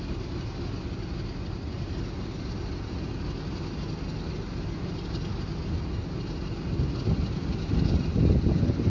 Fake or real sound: real